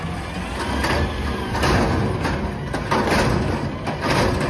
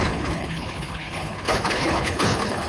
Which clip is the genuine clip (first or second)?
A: first